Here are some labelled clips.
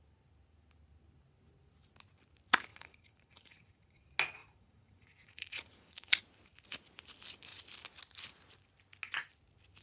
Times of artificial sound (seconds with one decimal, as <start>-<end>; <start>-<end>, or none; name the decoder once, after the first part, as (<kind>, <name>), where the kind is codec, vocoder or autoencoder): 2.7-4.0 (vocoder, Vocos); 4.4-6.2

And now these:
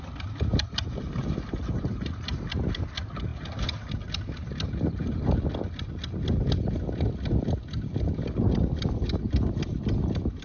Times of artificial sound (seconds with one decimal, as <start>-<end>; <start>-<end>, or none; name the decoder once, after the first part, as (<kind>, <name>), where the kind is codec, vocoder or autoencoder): none

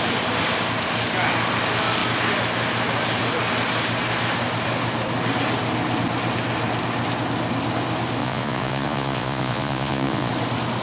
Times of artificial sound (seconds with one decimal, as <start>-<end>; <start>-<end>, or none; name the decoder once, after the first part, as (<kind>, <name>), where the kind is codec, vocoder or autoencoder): 8.2-10.3 (vocoder, Vocos)

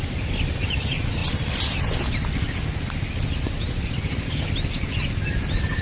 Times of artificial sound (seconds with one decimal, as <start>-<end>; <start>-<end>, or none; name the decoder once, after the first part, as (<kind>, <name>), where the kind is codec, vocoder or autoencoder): none

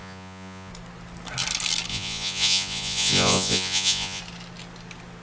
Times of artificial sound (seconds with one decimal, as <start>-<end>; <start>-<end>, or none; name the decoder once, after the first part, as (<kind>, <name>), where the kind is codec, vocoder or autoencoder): 0.0-0.7 (vocoder, Vocos); 1.9-4.2

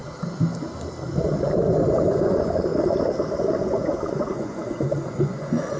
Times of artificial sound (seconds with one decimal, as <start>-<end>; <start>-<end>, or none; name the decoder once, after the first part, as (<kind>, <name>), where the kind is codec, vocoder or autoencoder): 2.1-2.7 (vocoder, Vocos); 3.5-5.8

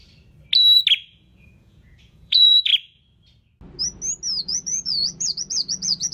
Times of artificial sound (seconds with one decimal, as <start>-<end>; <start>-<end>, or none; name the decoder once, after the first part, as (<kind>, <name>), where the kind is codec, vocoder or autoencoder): 1.1-2.7 (vocoder, Vocos); 4.4-6.1

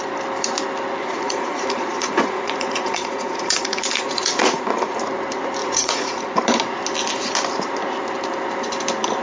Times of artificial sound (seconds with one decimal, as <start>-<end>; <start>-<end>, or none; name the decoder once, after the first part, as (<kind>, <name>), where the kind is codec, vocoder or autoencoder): 1.0-5.0 (vocoder, Vocos); 5.6-6.3